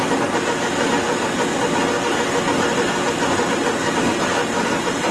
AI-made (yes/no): no